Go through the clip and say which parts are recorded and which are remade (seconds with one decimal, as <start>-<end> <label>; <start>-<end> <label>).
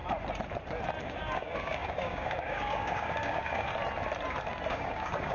0.0-1.0 recorded; 1.0-3.7 remade; 3.7-4.7 recorded; 4.7-5.3 remade